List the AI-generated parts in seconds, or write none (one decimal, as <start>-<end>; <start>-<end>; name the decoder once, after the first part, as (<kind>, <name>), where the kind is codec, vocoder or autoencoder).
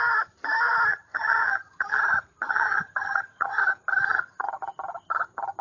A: 0.9-2.0 (vocoder, HiFi-GAN); 2.5-3.6; 4.0-4.5